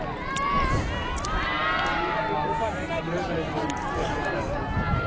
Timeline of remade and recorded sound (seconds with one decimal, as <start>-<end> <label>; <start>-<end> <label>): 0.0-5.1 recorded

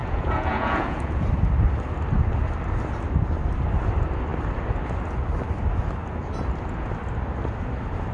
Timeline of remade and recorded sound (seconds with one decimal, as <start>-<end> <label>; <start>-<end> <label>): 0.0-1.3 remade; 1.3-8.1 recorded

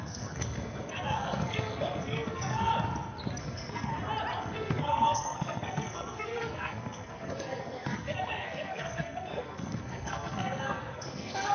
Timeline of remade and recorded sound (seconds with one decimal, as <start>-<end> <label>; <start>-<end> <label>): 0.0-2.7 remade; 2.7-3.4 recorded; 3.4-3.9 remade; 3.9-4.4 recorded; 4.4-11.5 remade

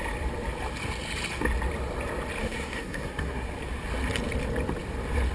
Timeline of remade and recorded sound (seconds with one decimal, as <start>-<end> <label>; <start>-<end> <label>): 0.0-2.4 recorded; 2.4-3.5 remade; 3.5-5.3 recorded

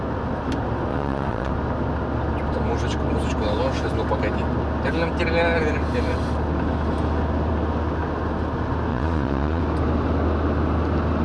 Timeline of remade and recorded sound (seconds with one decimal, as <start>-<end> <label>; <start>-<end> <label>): 0.0-0.9 recorded; 0.9-1.5 remade; 1.5-8.9 recorded; 8.9-9.6 remade; 9.6-11.2 recorded